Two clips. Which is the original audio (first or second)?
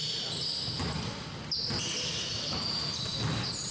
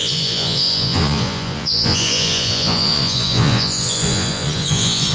first